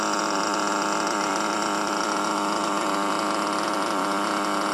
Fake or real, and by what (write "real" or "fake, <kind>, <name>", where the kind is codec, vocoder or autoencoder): real